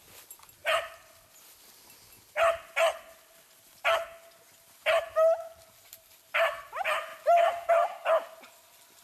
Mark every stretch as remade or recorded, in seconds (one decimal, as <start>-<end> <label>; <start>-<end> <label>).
0.0-9.0 recorded